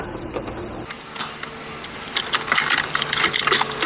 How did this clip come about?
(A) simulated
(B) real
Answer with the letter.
A